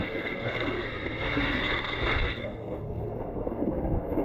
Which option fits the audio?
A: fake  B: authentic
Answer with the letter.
A